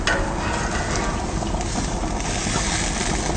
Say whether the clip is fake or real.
real